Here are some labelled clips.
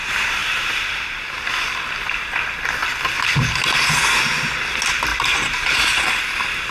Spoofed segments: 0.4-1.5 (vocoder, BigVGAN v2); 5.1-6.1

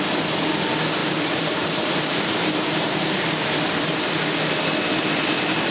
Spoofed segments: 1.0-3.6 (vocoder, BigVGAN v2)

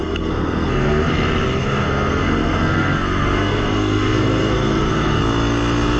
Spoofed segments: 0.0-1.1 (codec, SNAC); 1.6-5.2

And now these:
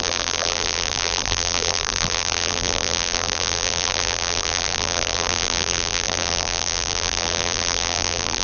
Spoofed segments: 0.0-8.4 (vocoder, BigVGAN v2)

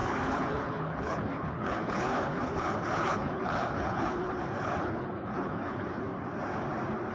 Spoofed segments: 0.0-6.1 (codec, HILCodec)

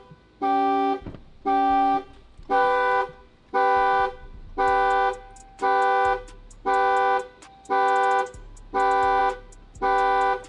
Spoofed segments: none

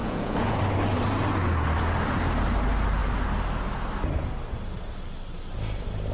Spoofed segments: 0.0-0.6 (vocoder, Vocos)